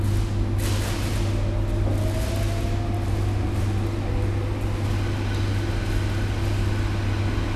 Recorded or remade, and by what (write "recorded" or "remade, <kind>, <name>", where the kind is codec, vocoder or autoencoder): recorded